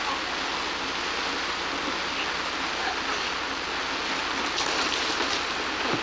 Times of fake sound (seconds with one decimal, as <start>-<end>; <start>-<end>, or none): none